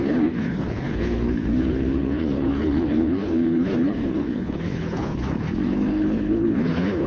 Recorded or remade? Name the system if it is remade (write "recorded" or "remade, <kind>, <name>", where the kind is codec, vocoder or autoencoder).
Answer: remade, codec, HILCodec